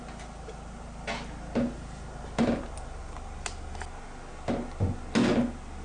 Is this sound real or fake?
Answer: real